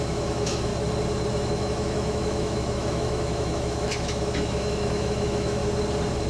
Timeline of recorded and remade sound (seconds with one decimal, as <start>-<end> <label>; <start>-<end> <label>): 0.0-0.7 remade; 0.7-1.3 recorded; 1.3-5.6 remade; 5.6-6.3 recorded